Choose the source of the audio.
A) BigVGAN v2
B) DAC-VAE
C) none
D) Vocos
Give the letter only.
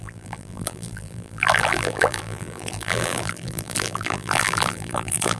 A